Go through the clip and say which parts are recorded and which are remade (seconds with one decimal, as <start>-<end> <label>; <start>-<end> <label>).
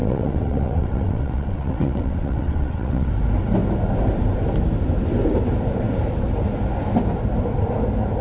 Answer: 0.0-3.1 remade; 3.1-8.2 recorded